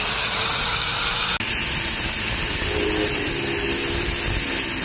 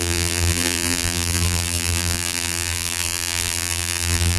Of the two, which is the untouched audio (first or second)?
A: first